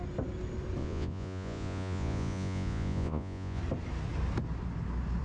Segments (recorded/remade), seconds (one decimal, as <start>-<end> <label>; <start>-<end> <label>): 0.0-0.8 recorded; 0.8-3.6 remade; 3.6-5.2 recorded